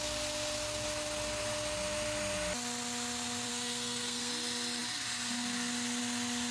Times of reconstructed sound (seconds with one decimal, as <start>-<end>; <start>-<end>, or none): 3.5-4.3